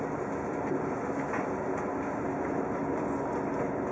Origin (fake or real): real